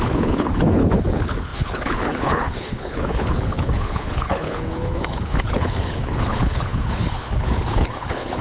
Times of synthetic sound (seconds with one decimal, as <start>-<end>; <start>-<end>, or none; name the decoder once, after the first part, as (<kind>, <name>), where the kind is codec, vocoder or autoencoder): 0.0-8.4 (codec, HILCodec)